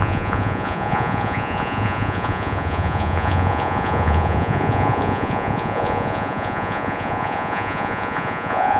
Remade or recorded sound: remade